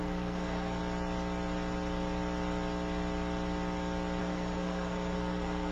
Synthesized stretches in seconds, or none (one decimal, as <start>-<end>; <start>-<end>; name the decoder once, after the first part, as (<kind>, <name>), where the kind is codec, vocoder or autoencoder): 0.0-0.8 (codec, SNAC); 4.2-5.7